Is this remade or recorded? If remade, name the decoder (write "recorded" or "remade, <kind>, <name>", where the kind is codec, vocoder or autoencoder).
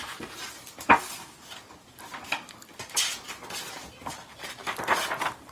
recorded